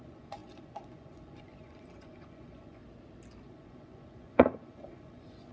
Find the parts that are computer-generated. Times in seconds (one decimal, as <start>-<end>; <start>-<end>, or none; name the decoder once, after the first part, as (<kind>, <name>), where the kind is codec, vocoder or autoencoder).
0.0-2.8 (vocoder, Vocos); 3.4-5.5

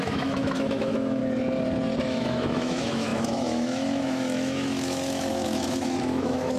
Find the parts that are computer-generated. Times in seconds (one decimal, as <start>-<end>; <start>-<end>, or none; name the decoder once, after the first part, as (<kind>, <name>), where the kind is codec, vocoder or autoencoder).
0.0-1.2 (autoencoder, DAC-VAE); 2.0-6.6

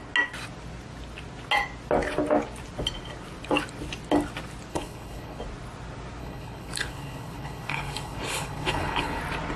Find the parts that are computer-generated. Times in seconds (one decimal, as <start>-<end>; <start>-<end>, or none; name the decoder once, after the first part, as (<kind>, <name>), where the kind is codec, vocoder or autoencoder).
4.7-5.4 (codec, HILCodec); 6.2-9.2

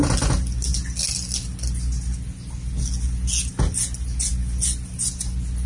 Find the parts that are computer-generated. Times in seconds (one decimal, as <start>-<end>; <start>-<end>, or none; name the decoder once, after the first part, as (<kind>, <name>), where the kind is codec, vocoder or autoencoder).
none

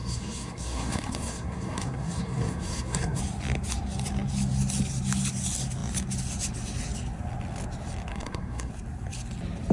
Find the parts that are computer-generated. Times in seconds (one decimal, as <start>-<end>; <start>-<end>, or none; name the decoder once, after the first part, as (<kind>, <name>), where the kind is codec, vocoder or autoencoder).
0.0-3.2 (codec, SNAC); 8.1-8.7

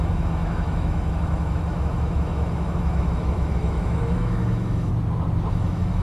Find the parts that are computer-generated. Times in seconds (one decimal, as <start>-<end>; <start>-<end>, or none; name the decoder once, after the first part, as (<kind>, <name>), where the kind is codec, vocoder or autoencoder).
0.0-4.9 (autoencoder, DAC-VAE); 5.5-6.0

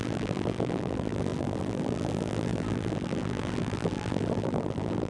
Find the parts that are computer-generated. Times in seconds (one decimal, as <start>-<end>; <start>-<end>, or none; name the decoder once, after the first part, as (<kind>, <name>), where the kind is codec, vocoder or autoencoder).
0.0-5.1 (vocoder, BigVGAN v2)

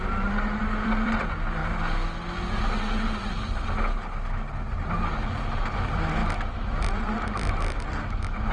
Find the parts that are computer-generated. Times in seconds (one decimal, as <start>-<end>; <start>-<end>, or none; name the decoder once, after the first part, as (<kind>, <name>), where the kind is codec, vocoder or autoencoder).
0.6-1.2 (vocoder, BigVGAN v2)